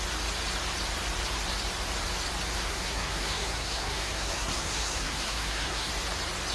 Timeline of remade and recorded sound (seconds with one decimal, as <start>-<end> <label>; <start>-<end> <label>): 0.0-2.7 recorded; 2.7-5.9 remade; 5.9-6.5 recorded